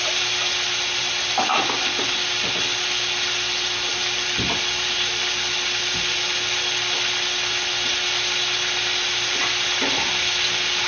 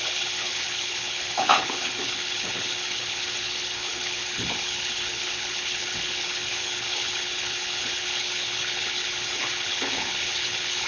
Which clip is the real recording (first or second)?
first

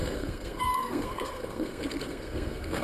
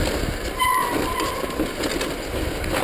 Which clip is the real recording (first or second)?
second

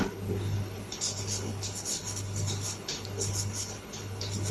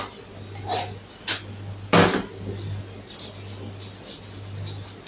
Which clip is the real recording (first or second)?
second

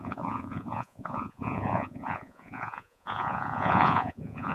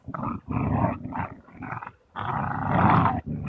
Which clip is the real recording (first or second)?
second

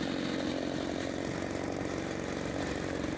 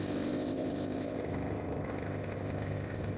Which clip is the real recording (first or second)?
first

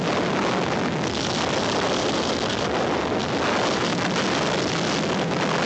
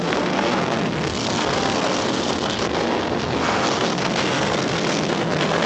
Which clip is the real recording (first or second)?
first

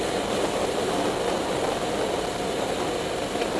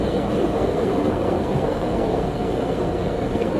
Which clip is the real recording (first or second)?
first